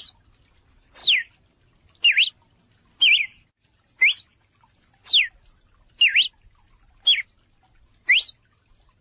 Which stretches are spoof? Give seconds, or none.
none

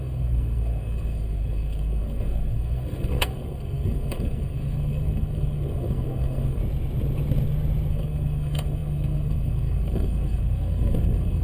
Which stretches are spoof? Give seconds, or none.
0.0-6.6 (codec, SNAC); 7.9-11.4